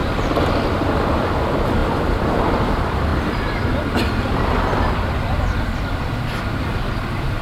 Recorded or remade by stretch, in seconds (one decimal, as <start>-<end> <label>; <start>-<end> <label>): 0.0-1.1 recorded; 1.1-3.1 remade; 3.1-6.6 recorded; 6.6-7.4 remade